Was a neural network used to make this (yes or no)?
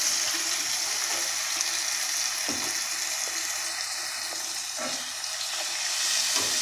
no